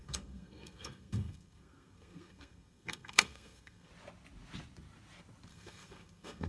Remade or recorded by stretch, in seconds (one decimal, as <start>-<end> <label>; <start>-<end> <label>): 0.0-3.9 remade; 3.9-5.5 recorded; 5.5-6.5 remade